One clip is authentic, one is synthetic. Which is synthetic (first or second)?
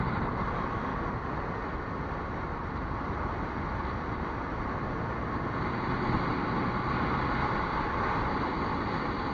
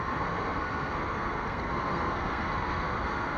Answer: second